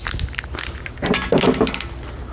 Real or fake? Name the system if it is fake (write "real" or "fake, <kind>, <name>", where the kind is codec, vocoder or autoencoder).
real